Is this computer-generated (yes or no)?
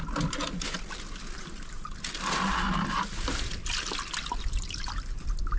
no